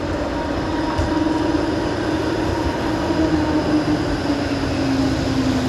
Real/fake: real